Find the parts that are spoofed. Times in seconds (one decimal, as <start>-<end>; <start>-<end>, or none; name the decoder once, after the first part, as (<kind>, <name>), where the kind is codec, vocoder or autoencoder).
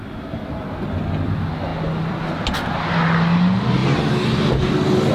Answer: none